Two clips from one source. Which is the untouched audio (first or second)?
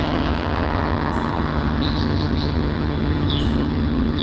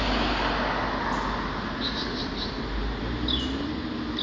second